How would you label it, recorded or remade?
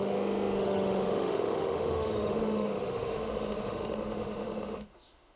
remade